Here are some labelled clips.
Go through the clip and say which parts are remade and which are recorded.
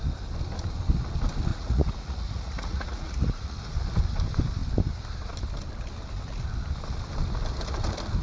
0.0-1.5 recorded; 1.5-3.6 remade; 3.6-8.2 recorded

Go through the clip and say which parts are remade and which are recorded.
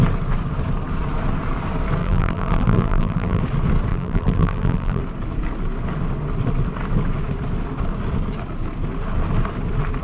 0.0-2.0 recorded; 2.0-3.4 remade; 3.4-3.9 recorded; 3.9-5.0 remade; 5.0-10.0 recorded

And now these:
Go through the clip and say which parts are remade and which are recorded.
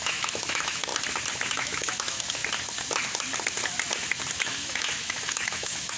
0.0-0.9 remade; 0.9-1.5 recorded; 1.5-2.4 remade; 2.4-4.4 recorded; 4.4-6.0 remade